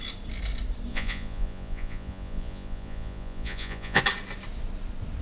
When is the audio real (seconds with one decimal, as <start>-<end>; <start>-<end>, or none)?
0.0-0.9; 4.0-5.2